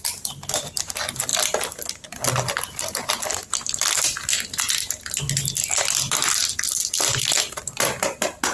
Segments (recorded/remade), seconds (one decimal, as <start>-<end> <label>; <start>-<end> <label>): 0.0-8.5 recorded